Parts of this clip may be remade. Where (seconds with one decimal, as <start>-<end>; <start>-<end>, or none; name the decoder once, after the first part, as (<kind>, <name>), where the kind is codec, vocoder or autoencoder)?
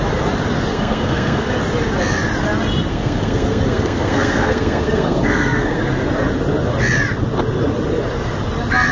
0.7-1.5 (codec, SNAC); 2.9-5.8